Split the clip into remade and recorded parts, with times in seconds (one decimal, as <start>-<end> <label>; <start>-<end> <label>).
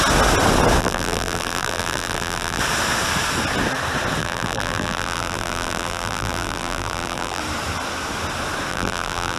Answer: 0.0-0.8 recorded; 0.8-2.6 remade; 2.6-4.2 recorded; 4.2-7.4 remade; 7.4-8.7 recorded; 8.7-9.4 remade